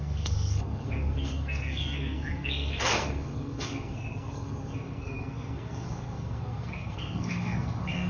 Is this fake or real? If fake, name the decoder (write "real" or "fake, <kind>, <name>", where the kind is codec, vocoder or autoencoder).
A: fake, codec, SNAC